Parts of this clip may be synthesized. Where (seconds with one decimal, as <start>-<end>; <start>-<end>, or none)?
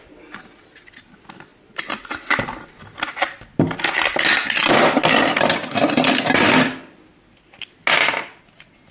none